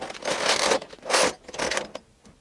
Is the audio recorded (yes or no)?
yes